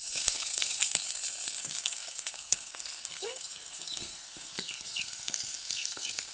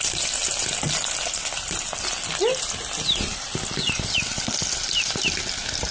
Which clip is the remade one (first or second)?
first